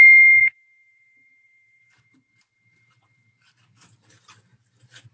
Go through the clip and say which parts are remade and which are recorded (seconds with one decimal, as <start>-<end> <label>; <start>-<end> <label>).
0.0-0.4 recorded; 0.4-3.5 remade; 3.5-5.1 recorded